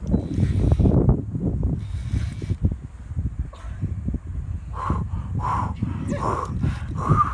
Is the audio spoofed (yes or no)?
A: no